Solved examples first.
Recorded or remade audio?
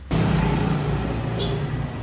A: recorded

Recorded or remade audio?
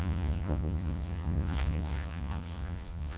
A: remade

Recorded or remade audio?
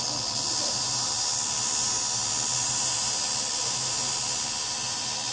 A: recorded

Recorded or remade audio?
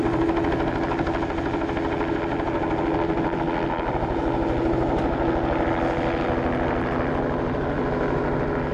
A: recorded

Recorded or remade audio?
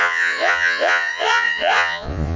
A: remade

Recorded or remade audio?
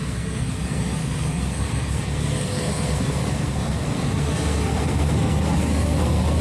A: remade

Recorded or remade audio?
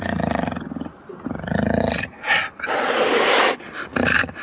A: recorded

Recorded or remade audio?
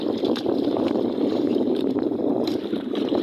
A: remade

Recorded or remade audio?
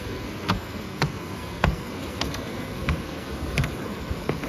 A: remade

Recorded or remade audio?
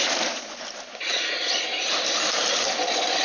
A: remade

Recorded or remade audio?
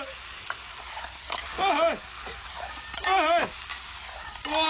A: recorded